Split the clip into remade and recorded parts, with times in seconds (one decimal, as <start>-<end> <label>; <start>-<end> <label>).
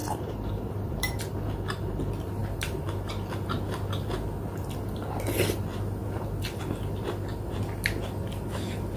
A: 0.0-1.2 remade; 1.2-9.0 recorded